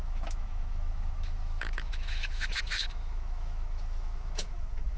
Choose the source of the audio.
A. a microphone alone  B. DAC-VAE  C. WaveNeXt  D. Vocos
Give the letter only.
B